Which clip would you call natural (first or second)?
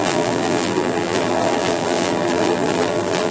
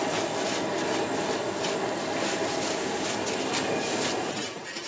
second